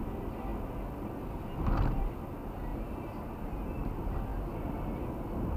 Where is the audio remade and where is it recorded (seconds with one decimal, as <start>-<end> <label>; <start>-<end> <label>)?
0.0-2.7 recorded; 2.7-3.6 remade; 3.6-5.6 recorded